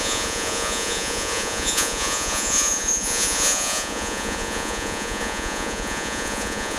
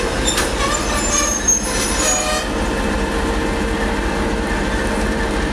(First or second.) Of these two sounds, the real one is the second